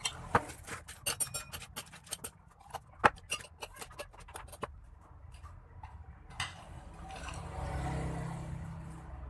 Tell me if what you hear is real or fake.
real